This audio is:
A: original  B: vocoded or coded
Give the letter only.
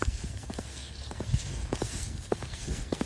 B